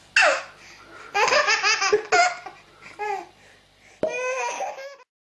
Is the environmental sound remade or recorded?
recorded